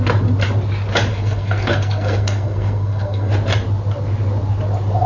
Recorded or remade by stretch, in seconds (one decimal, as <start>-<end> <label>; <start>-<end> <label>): 0.0-1.1 recorded; 1.1-3.3 remade; 3.3-5.1 recorded